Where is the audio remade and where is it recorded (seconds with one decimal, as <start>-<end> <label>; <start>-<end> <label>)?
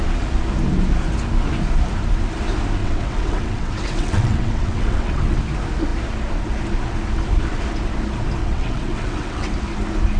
0.0-2.8 recorded; 2.8-5.4 remade; 5.4-8.4 recorded; 8.4-9.6 remade; 9.6-10.2 recorded